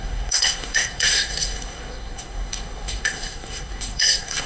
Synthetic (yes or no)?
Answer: yes